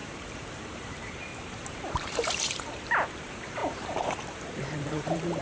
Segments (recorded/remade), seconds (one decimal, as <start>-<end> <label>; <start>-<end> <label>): 0.0-5.4 remade